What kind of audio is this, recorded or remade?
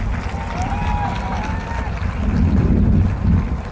recorded